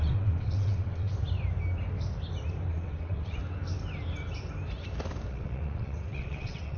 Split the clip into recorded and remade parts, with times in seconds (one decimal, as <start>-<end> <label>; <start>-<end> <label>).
0.0-1.1 remade; 1.1-2.7 recorded; 2.7-3.4 remade; 3.4-5.3 recorded; 5.3-6.8 remade